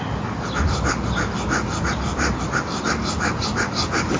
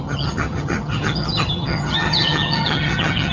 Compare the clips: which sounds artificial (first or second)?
second